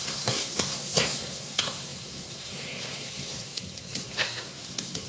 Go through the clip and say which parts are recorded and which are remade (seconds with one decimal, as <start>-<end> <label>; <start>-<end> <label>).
0.0-5.1 remade